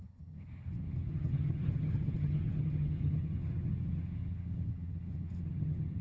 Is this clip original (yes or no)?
no